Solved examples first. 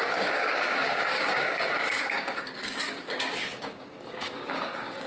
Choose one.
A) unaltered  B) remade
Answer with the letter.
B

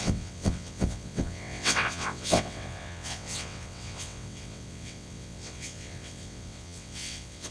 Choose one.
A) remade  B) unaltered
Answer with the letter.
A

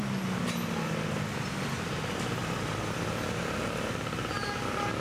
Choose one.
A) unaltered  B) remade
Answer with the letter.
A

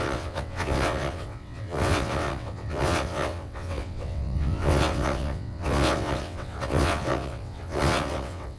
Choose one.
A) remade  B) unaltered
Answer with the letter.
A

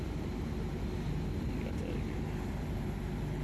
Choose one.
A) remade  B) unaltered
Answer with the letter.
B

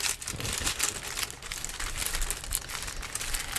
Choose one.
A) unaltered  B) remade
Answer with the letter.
A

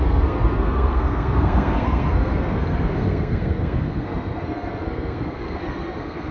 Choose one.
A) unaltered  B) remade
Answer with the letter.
B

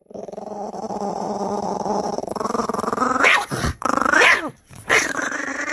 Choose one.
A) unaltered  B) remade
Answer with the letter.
B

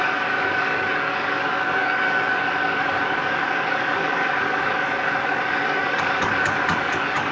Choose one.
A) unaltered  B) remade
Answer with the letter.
B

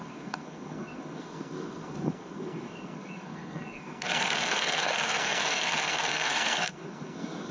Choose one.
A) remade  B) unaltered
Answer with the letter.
A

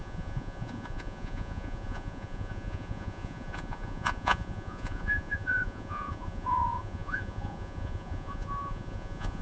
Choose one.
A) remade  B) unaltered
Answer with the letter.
A